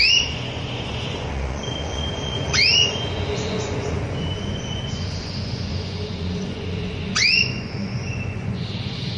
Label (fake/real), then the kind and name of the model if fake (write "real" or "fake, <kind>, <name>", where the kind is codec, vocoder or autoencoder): fake, vocoder, Vocos